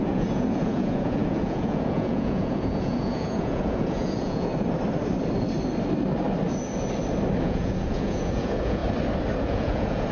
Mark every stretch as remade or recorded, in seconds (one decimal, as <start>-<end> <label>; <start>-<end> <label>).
0.0-4.5 remade; 4.5-7.4 recorded; 7.4-8.8 remade; 8.8-9.4 recorded; 9.4-10.1 remade